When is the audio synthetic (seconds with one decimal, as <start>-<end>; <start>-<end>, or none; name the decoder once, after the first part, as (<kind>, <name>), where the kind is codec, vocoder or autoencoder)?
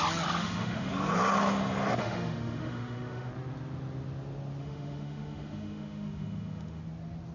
0.4-0.9 (autoencoder, DAC-VAE); 2.0-3.3; 4.6-6.8